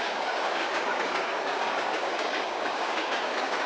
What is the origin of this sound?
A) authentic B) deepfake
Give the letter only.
B